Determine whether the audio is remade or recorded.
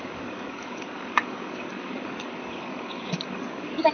remade